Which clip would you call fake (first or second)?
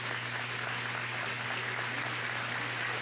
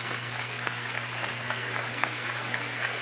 second